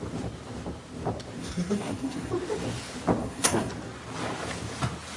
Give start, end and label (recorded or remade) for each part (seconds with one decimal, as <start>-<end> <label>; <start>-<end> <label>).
0.0-1.4 recorded; 1.4-2.3 remade; 2.3-3.2 recorded; 3.2-3.7 remade; 3.7-5.2 recorded